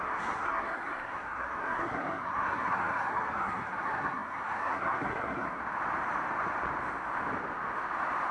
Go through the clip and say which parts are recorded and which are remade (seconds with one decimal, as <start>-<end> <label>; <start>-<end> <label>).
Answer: 0.0-5.6 remade; 5.6-8.3 recorded